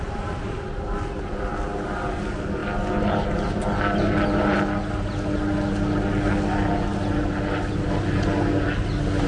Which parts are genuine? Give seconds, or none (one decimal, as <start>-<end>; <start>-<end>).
0.0-9.3